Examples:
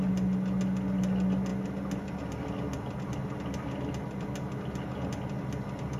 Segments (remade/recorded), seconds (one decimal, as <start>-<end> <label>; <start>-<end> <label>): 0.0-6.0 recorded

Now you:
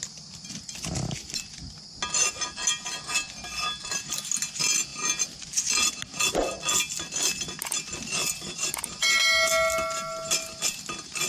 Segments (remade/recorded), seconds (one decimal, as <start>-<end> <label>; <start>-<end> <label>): 0.0-11.3 recorded

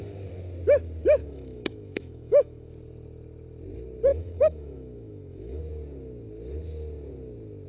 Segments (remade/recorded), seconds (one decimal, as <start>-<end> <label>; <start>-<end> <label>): 0.0-1.2 recorded; 1.2-2.7 remade; 2.7-4.1 recorded; 4.1-5.6 remade; 5.6-7.7 recorded

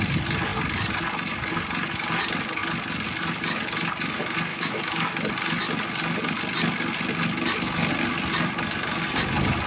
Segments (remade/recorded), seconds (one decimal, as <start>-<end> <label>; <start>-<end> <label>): 0.0-4.5 recorded; 4.5-5.3 remade; 5.3-9.7 recorded

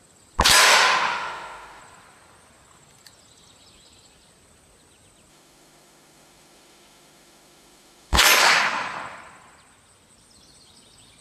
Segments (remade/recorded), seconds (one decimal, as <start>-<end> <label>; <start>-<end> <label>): 0.0-0.6 recorded; 0.6-1.8 remade; 1.8-5.3 recorded; 5.3-8.2 remade; 8.2-11.2 recorded

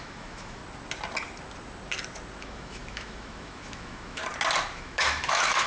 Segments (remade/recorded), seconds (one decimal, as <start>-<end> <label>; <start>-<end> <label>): 0.0-0.6 remade; 0.6-2.4 recorded; 2.4-4.2 remade; 4.2-4.7 recorded; 4.7-5.7 remade

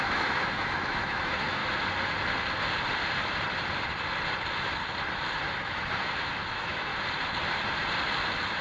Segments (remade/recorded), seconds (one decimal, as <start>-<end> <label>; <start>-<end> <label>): 0.0-1.6 remade; 1.6-5.6 recorded; 5.6-6.9 remade; 6.9-8.6 recorded